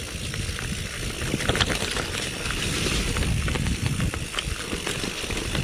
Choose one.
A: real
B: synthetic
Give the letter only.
A